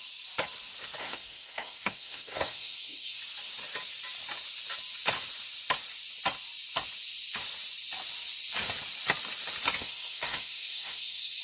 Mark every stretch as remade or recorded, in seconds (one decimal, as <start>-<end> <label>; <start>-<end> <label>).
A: 0.0-1.0 recorded; 1.0-3.2 remade; 3.2-9.8 recorded; 9.8-11.4 remade